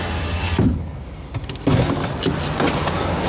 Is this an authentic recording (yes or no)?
yes